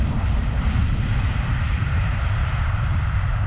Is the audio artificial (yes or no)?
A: yes